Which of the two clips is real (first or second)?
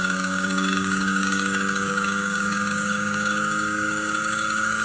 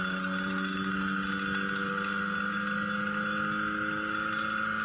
second